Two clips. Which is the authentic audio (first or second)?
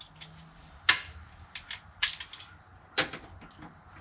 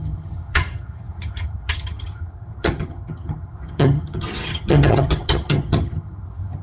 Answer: first